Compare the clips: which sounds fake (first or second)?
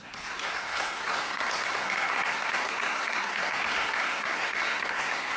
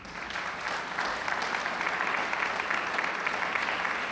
first